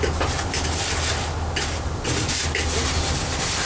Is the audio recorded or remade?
recorded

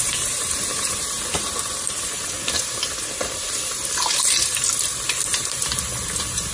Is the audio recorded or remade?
remade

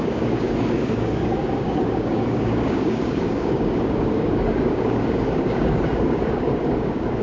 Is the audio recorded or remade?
remade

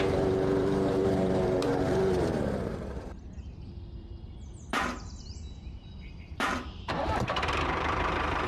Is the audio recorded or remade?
remade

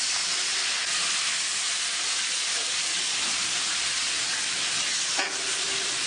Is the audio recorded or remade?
recorded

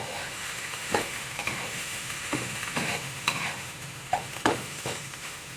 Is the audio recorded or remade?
remade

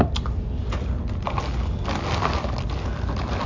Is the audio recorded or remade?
recorded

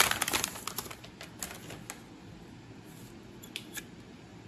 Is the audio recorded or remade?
recorded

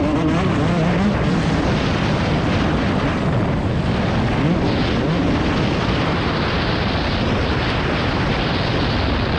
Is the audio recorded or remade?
recorded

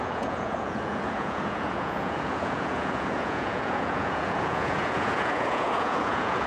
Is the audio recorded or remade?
remade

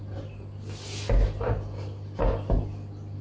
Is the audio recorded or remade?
recorded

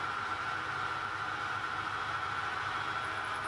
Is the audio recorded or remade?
recorded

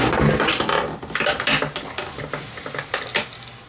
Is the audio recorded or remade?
recorded